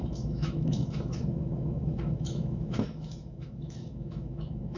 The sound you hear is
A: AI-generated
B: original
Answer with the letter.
A